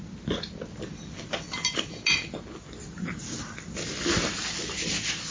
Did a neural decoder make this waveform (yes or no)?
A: no